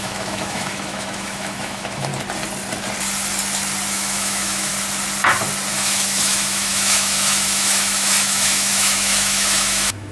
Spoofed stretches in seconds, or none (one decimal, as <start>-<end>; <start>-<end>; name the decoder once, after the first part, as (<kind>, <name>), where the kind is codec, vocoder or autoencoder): 0.0-2.1 (autoencoder, DAC-VAE); 3.9-4.7; 5.7-10.1